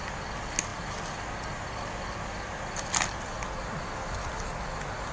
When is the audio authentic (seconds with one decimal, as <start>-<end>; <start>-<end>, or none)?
0.0-5.1